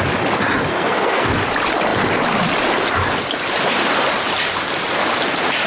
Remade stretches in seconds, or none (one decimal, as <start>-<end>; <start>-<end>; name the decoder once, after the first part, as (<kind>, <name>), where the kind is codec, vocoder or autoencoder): 0.7-1.3 (codec, SNAC)